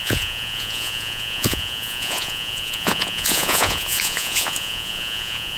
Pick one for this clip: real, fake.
fake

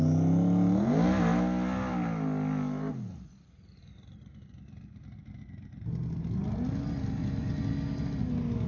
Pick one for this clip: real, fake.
real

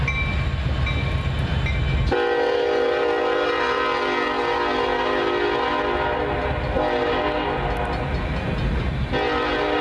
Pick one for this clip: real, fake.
real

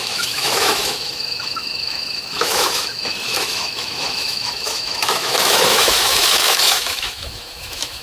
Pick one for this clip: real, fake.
fake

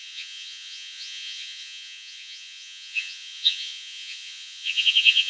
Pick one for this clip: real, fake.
fake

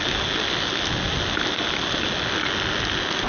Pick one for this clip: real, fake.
real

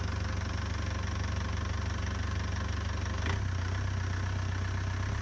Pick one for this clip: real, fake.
real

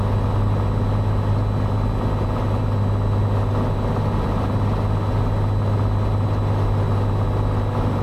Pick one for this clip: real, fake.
real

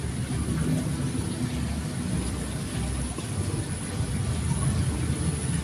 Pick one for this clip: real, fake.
real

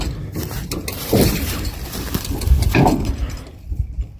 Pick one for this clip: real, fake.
real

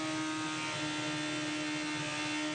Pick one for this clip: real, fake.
real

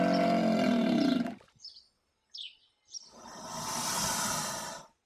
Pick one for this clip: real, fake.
real